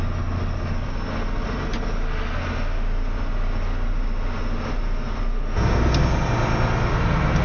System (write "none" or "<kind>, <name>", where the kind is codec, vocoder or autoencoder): none